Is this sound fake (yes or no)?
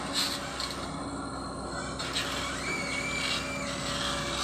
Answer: yes